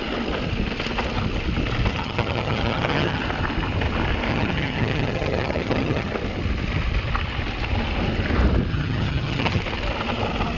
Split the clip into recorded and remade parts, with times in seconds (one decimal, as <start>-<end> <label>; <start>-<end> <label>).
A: 0.0-1.9 recorded; 1.9-3.2 remade; 3.2-4.3 recorded; 4.3-6.1 remade; 6.1-8.7 recorded; 8.7-9.6 remade; 9.6-10.6 recorded